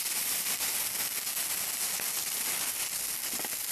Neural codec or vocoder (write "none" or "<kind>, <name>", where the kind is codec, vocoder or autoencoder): none